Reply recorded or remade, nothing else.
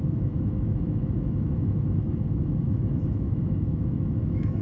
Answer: remade